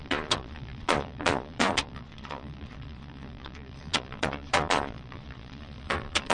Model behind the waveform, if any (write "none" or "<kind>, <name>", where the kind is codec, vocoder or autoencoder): vocoder, Vocos